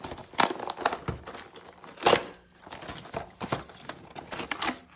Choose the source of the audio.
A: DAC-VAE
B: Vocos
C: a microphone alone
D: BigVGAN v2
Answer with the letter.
C